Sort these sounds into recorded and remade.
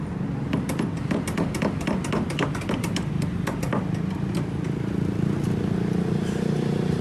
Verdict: recorded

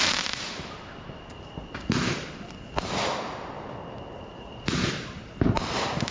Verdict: recorded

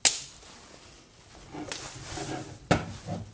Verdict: recorded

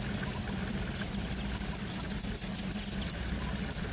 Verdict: recorded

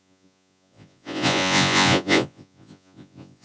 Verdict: remade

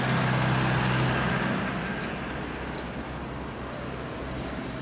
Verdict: recorded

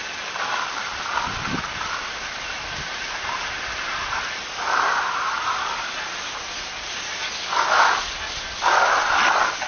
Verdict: recorded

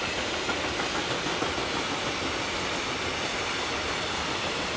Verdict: recorded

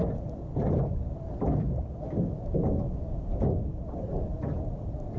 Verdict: recorded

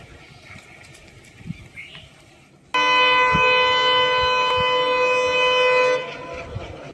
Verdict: recorded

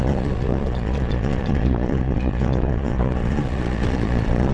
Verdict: remade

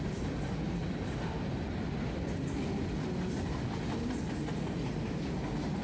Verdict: recorded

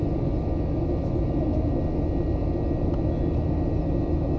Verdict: recorded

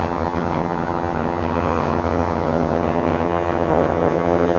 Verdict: remade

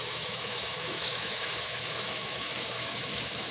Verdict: remade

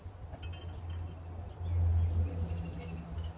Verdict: recorded